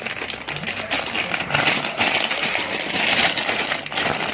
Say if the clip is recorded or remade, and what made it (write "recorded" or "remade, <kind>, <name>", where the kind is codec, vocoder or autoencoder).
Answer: recorded